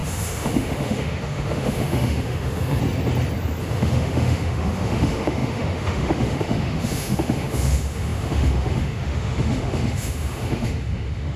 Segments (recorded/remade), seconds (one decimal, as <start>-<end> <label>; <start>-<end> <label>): 0.0-2.8 remade; 2.8-3.6 recorded; 3.6-11.4 remade